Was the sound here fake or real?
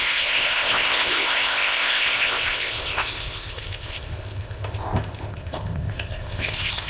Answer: fake